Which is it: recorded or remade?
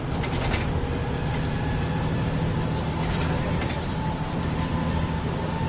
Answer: remade